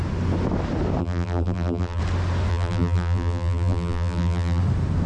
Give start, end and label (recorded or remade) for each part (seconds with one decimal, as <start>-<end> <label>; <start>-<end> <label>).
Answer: 0.0-1.0 recorded; 1.0-2.0 remade; 2.0-2.5 recorded; 2.5-4.6 remade; 4.6-5.1 recorded